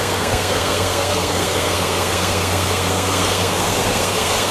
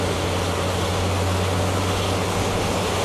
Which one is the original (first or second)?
second